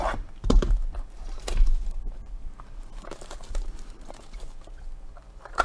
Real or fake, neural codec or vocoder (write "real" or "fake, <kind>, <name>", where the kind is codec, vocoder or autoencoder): fake, vocoder, BigVGAN v2